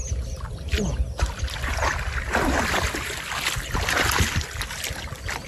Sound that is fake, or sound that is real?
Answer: real